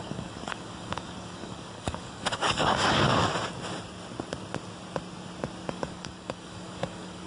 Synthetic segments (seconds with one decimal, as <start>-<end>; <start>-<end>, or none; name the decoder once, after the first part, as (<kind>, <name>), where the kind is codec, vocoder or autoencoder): 0.0-3.3 (codec, DAC); 5.7-7.3